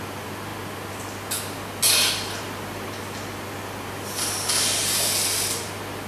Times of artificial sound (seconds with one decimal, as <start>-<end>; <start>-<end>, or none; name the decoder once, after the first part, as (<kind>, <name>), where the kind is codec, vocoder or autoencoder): none